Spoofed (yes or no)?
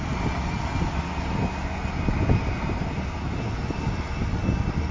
no